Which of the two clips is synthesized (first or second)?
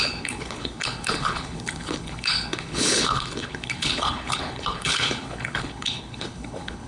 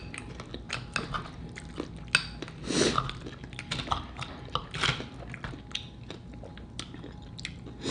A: first